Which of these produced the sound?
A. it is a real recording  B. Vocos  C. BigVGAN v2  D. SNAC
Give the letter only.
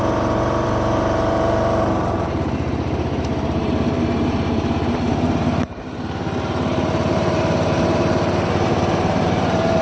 C